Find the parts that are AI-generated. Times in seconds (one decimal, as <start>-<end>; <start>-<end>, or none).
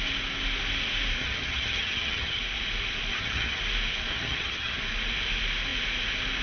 1.2-2.4; 3.1-3.6; 4.1-4.8